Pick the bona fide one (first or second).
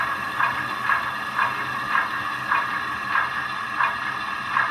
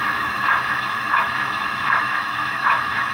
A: first